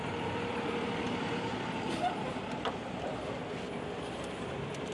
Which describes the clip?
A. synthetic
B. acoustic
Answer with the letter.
B